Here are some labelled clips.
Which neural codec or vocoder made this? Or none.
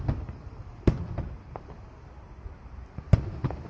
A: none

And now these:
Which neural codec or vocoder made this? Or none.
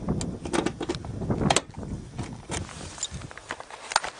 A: none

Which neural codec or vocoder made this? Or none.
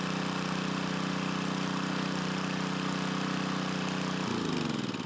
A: none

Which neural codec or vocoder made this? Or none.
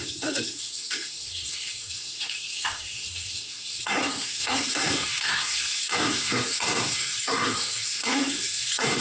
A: codec, SNAC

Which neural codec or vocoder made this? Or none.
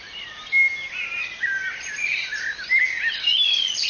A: none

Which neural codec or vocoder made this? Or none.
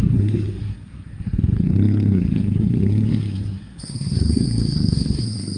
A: codec, SNAC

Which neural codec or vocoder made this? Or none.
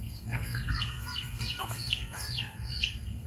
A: codec, SNAC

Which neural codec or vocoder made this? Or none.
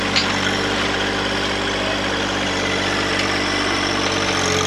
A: none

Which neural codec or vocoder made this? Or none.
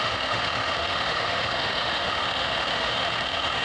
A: autoencoder, DAC-VAE